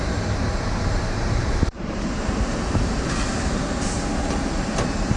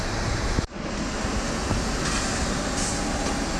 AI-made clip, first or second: first